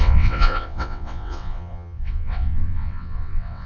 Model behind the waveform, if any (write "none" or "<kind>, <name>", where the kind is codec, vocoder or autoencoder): vocoder, WaveNeXt